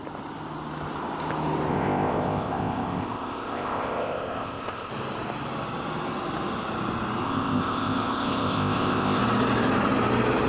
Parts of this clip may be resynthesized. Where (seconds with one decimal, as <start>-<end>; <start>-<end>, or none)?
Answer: 1.7-4.9; 7.2-9.2